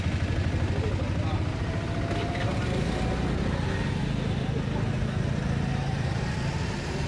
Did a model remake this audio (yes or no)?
no